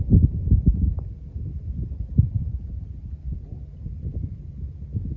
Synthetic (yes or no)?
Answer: no